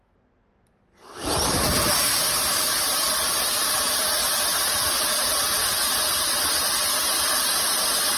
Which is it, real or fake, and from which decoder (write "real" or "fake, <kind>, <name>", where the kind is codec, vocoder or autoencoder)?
real